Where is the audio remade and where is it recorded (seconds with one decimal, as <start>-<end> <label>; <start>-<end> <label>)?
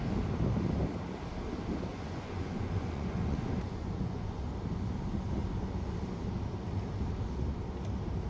0.0-1.9 recorded; 1.9-4.4 remade; 4.4-8.3 recorded